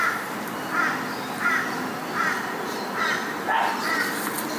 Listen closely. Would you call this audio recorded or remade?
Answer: recorded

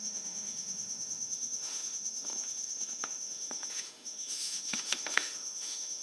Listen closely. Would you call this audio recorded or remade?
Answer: remade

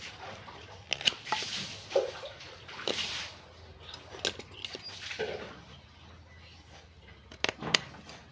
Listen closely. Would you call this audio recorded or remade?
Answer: recorded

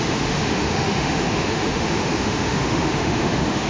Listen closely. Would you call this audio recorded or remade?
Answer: remade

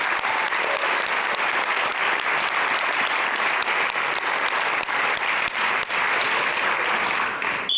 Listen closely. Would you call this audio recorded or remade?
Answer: recorded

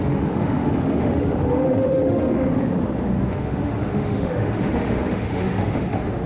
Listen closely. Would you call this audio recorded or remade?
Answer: remade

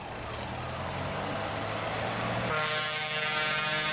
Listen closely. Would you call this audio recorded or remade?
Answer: recorded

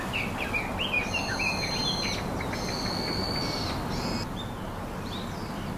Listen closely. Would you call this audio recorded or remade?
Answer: recorded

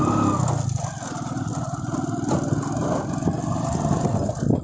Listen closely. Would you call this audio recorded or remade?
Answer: recorded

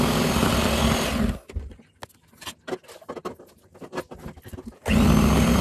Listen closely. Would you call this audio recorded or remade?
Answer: recorded